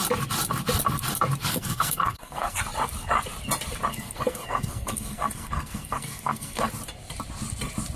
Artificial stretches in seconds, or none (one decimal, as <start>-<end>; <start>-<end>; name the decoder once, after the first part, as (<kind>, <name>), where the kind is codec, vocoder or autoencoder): 1.4-2.6 (codec, SNAC); 3.9-6.7